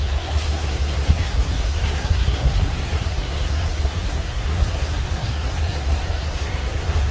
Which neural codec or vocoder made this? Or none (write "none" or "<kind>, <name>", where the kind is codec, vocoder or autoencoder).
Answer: codec, SNAC